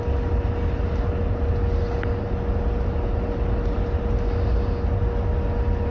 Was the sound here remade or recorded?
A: recorded